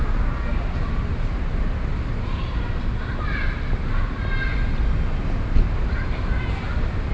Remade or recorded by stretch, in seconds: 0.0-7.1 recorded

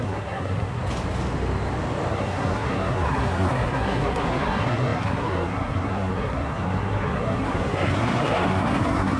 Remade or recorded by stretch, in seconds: 0.0-0.8 remade; 0.8-2.1 recorded; 2.1-9.2 remade